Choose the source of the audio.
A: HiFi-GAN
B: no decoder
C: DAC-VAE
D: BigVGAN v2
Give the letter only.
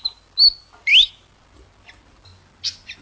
B